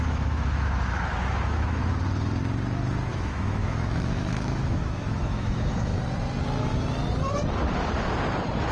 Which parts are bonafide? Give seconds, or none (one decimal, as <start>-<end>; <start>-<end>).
1.8-3.1; 5.9-8.7